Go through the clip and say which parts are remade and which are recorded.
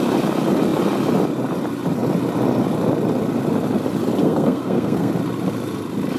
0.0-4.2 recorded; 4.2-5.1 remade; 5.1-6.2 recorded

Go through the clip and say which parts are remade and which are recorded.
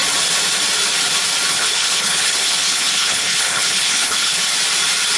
0.0-1.5 recorded; 1.5-4.5 remade; 4.5-5.2 recorded